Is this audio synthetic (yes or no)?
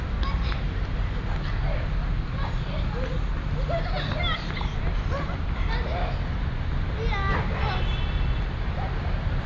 no